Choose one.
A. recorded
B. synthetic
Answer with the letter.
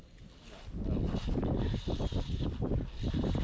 A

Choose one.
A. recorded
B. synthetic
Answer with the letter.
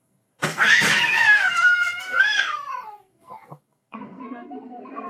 B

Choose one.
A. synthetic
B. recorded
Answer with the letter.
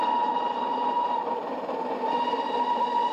B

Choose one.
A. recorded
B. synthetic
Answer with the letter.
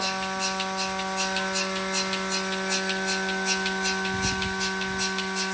A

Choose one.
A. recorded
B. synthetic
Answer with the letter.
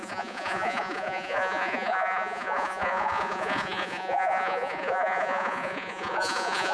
B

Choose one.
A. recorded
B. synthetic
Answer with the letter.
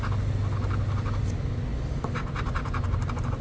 A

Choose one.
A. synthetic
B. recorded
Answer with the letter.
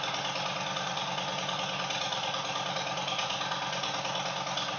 B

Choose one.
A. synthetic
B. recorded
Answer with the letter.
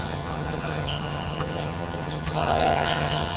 A